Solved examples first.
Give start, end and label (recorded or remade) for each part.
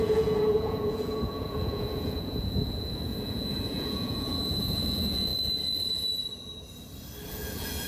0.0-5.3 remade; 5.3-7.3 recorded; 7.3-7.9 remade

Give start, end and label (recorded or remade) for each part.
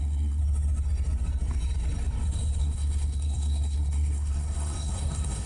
0.0-0.4 remade; 0.4-2.6 recorded; 2.6-5.5 remade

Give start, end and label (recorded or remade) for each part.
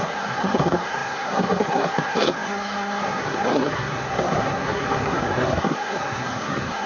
0.0-6.9 remade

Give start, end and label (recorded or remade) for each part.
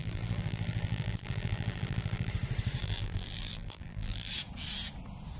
0.0-2.3 remade; 2.3-2.8 recorded; 2.8-4.3 remade; 4.3-5.4 recorded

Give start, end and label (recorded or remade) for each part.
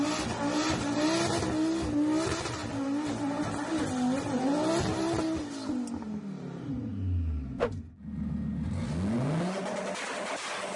0.0-10.8 recorded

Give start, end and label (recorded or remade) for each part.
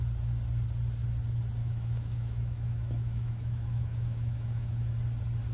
0.0-1.6 recorded; 1.6-4.9 remade; 4.9-5.5 recorded